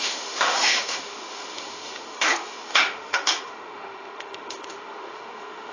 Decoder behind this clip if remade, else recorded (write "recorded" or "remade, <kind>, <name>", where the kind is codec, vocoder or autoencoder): remade, autoencoder, DAC-VAE